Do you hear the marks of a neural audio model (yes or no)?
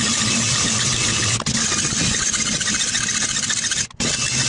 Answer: no